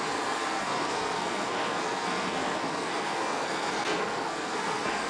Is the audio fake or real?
fake